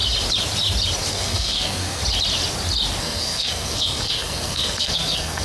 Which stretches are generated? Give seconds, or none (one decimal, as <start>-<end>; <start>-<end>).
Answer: 1.1-2.0; 3.0-5.4